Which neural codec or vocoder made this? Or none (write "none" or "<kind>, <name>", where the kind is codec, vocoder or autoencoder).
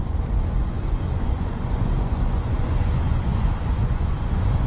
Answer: vocoder, Vocos